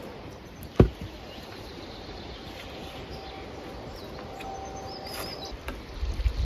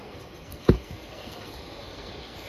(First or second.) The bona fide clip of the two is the first